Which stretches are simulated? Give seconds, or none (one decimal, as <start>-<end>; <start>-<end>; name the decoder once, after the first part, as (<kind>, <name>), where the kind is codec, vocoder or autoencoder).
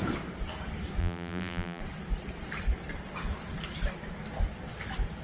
1.0-1.8 (vocoder, BigVGAN v2)